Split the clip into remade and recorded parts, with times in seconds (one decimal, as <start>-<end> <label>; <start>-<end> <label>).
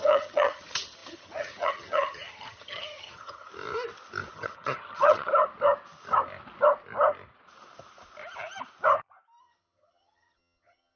0.0-3.5 remade; 3.5-4.3 recorded; 4.3-5.3 remade; 5.3-9.4 recorded; 9.4-11.0 remade